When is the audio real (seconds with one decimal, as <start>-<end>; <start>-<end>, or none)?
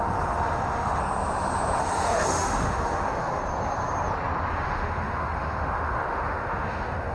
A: 1.0-1.8; 3.4-4.5